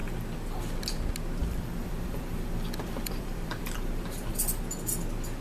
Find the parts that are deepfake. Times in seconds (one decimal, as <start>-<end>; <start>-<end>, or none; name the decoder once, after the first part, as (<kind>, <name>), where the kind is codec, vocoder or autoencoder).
1.4-4.6 (vocoder, BigVGAN v2)